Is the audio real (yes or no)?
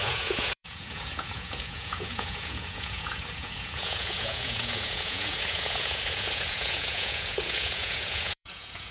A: no